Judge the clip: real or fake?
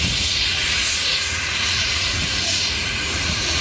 fake